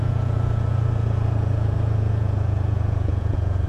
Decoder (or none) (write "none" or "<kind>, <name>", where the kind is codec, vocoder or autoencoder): vocoder, Vocos